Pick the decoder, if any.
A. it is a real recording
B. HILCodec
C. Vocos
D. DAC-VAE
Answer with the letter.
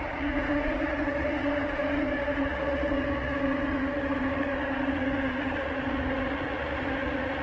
C